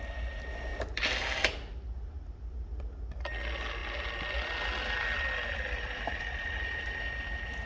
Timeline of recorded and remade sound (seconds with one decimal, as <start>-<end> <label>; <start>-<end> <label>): 0.0-3.8 recorded; 3.8-6.8 remade; 6.8-7.7 recorded